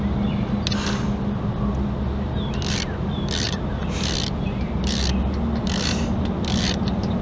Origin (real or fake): real